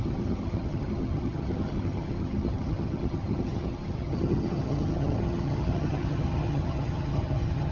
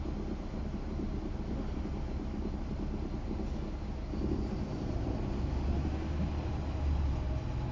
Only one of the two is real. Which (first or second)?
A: second